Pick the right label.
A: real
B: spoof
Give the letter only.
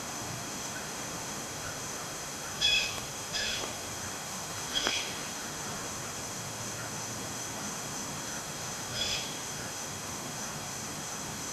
B